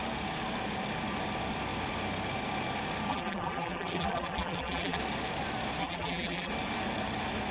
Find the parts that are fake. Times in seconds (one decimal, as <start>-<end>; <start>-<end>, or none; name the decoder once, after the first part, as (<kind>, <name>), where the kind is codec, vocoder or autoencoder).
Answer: 3.1-5.0 (vocoder, BigVGAN v2); 5.8-6.5